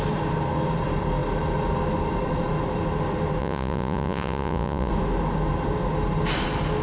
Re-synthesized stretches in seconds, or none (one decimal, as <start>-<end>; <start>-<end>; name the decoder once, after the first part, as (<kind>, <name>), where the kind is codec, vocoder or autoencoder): 3.4-4.9 (vocoder, Vocos)